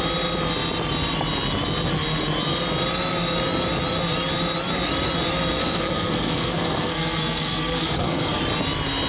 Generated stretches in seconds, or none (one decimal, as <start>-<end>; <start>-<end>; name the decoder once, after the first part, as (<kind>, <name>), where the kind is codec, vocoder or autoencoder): 5.6-8.4 (codec, SNAC)